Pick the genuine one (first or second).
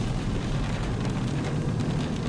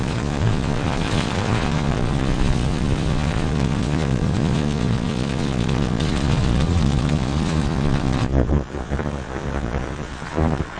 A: first